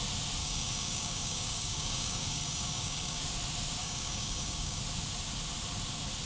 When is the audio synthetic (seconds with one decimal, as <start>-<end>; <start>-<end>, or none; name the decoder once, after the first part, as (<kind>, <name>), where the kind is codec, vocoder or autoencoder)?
0.4-3.2 (codec, DAC); 3.8-4.8